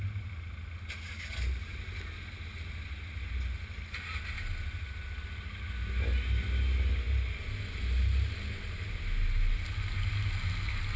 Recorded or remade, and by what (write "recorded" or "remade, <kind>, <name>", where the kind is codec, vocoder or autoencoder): recorded